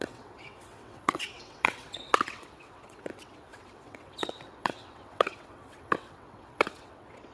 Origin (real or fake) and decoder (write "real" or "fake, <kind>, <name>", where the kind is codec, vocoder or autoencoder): fake, vocoder, WaveNeXt